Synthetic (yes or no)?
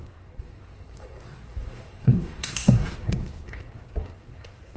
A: yes